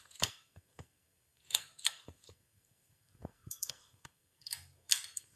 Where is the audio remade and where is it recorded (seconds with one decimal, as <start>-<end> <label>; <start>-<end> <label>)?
0.0-5.4 remade